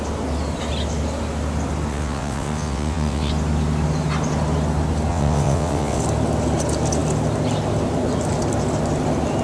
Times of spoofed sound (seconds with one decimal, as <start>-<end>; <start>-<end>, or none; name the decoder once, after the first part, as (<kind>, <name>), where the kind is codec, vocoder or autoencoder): 1.9-3.3 (vocoder, WaveNeXt); 5.1-6.0